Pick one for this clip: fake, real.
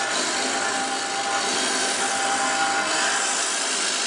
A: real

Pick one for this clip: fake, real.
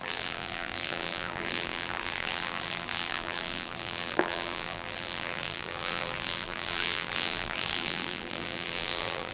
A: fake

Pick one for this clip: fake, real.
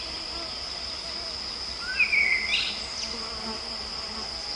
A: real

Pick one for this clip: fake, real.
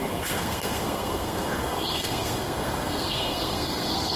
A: fake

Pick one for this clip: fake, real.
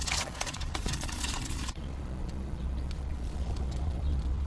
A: fake